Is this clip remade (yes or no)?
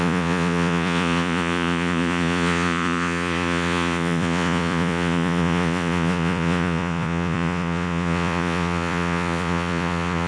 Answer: yes